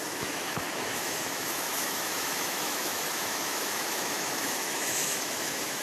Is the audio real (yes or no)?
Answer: no